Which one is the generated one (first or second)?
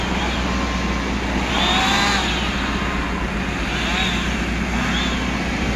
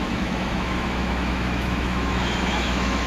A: second